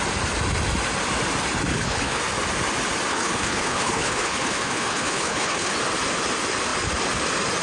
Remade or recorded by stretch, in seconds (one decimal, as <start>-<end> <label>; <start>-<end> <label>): 0.0-1.7 recorded; 1.7-2.2 remade; 2.2-3.1 recorded; 3.1-5.7 remade; 5.7-7.6 recorded